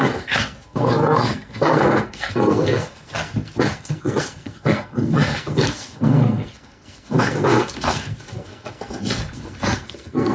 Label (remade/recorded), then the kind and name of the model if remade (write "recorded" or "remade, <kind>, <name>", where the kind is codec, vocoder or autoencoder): remade, codec, SNAC